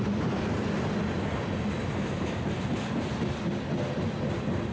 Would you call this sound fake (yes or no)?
no